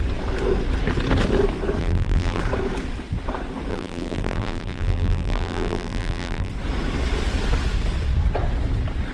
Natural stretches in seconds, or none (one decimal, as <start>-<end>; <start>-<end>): 0.0-1.8; 2.4-3.7; 6.5-9.1